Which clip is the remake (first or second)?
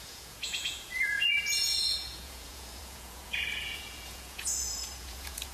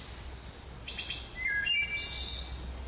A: first